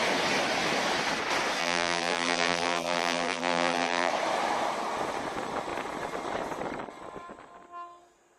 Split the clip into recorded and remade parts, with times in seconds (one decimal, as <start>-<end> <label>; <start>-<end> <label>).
0.0-1.6 recorded; 1.6-4.1 remade; 4.1-8.4 recorded